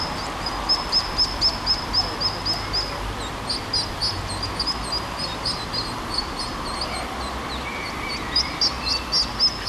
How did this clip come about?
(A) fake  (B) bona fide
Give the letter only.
B